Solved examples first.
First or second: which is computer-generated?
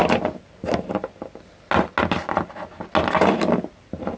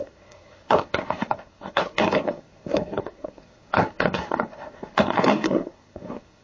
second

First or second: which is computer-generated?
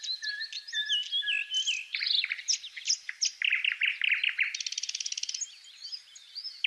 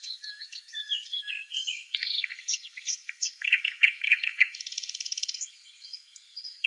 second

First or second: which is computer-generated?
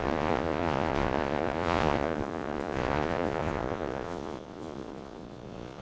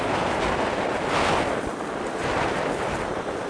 first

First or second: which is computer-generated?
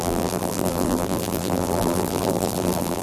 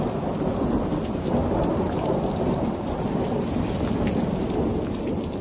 first